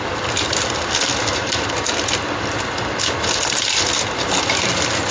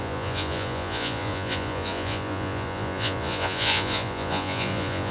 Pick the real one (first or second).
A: first